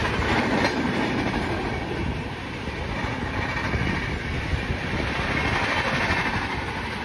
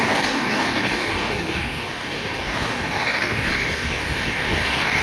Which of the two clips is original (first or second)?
first